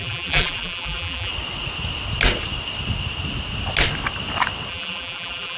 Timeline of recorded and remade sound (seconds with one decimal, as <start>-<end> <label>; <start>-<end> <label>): 0.0-1.3 remade; 1.3-4.7 recorded; 4.7-5.6 remade

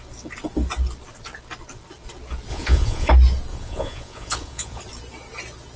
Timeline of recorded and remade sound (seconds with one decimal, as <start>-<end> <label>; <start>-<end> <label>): 0.0-2.5 recorded; 2.5-3.1 remade; 3.1-3.5 recorded; 3.5-4.8 remade; 4.8-5.8 recorded

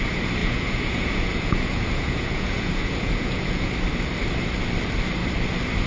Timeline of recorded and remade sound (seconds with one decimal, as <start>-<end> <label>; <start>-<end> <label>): 0.0-0.4 recorded; 0.4-3.7 remade; 3.7-5.9 recorded

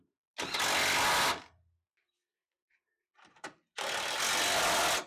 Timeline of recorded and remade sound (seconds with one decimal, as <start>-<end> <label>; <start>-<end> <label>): 0.0-2.4 recorded; 2.4-4.2 remade; 4.2-5.1 recorded

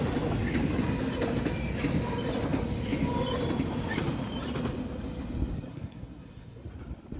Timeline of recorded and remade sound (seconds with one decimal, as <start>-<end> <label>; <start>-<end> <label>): 0.0-5.7 recorded; 5.7-6.6 remade; 6.6-7.2 recorded